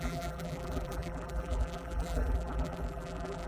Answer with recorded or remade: remade